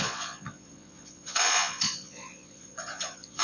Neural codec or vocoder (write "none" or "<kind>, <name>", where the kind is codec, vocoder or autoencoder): vocoder, Vocos